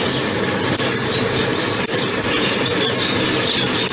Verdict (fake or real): real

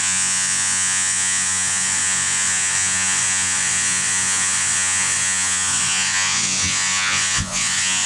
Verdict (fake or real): fake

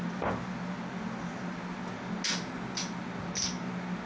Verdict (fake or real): real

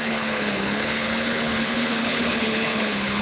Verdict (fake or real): fake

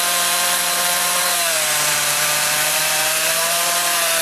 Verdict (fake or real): fake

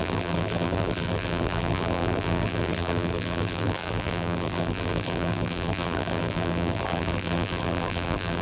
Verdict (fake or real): fake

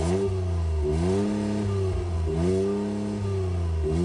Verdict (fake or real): real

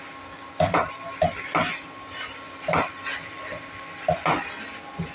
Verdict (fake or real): real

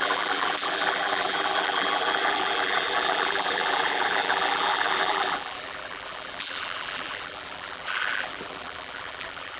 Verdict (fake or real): fake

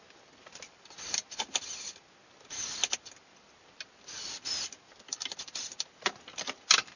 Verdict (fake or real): real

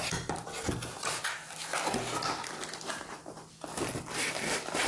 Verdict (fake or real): real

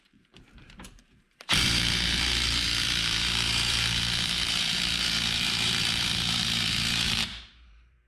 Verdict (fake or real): fake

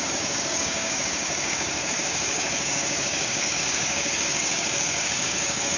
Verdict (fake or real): fake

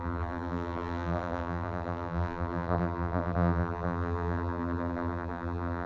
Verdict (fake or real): fake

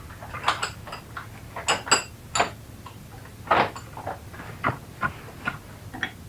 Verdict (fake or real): real